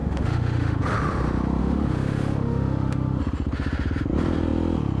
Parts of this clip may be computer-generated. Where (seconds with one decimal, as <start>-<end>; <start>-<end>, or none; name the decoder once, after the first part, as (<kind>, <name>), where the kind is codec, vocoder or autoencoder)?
0.0-0.8 (autoencoder, DAC-VAE); 1.6-3.2